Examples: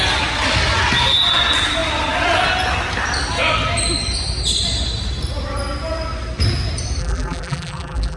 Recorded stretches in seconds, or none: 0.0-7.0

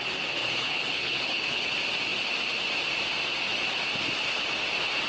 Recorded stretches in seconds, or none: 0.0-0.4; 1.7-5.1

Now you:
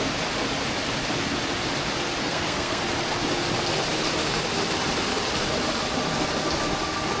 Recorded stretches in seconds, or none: 0.0-2.2; 2.8-7.2